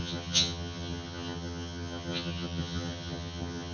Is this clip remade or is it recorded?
remade